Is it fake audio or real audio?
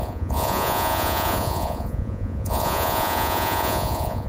fake